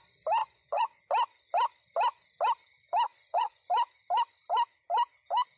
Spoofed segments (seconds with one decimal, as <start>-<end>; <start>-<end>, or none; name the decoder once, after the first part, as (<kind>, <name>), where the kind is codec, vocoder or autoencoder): 0.4-1.0 (vocoder, Vocos); 3.1-3.7

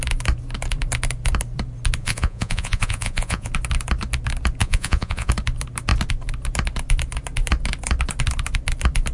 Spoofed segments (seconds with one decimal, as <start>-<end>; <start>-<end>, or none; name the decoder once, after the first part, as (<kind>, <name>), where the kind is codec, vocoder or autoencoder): 2.0-3.5 (vocoder, Vocos); 4.6-5.3

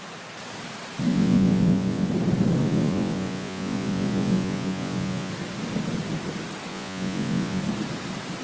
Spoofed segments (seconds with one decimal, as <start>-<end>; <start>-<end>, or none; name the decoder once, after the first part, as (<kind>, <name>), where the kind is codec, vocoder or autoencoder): 1.1-2.1 (vocoder, Vocos); 2.6-5.3; 6.7-7.6

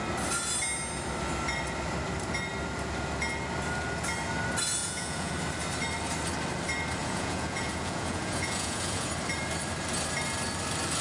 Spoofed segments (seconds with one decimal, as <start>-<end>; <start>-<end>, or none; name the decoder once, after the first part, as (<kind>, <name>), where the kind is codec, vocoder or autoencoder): 4.8-5.3 (vocoder, Vocos); 7.0-9.1

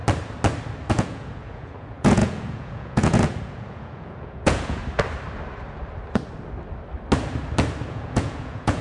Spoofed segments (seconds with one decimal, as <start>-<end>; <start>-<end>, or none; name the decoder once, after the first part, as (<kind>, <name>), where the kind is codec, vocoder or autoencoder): 0.9-4.8 (vocoder, Vocos); 7.9-8.8

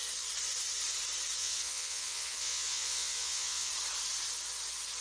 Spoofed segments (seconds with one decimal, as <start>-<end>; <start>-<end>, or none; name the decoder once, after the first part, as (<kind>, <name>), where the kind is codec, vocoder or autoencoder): 1.4-3.7 (vocoder, Vocos)

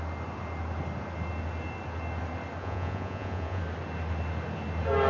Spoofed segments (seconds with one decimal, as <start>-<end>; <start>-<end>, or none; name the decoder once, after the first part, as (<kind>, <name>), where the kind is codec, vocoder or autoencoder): 2.6-3.6 (vocoder, Vocos)

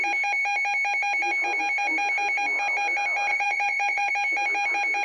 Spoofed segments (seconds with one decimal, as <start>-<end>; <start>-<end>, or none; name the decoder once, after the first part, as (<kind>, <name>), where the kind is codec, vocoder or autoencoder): 3.3-4.1 (vocoder, Vocos)